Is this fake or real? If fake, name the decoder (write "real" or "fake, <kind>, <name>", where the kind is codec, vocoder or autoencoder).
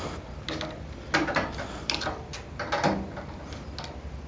real